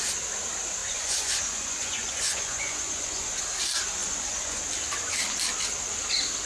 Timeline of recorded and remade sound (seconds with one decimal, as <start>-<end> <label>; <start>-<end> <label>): 0.0-0.8 recorded; 0.8-3.4 remade; 3.4-4.0 recorded; 4.0-4.6 remade; 4.6-6.5 recorded